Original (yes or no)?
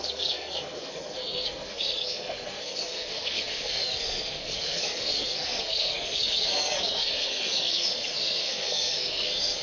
no